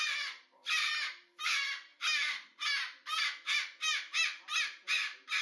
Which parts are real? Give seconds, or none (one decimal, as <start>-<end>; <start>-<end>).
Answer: 0.0-0.6; 1.4-1.9; 3.2-4.2